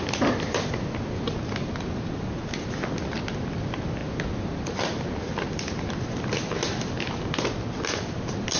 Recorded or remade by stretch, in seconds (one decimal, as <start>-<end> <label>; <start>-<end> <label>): 0.0-8.6 recorded